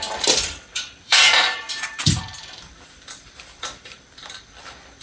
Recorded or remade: remade